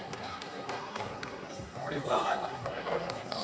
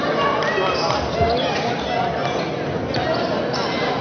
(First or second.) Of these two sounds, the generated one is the first